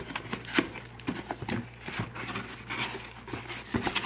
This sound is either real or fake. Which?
real